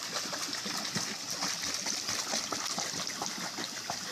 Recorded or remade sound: recorded